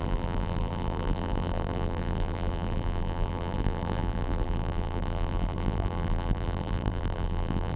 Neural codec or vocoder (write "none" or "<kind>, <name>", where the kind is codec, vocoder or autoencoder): vocoder, BigVGAN v2